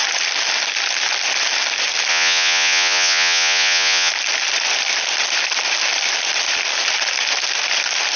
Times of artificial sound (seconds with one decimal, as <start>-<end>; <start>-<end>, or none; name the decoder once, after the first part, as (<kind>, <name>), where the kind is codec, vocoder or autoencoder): 2.1-4.1 (vocoder, Vocos)